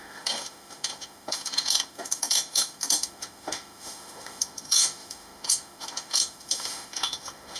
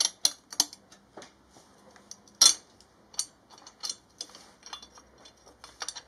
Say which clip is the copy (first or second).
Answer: first